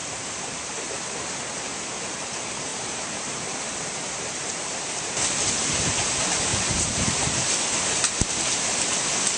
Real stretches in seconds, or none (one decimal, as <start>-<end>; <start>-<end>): 1.0-2.7; 5.0-6.5; 7.4-9.4